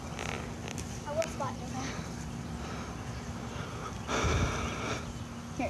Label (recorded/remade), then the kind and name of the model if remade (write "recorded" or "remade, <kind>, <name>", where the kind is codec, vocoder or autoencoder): recorded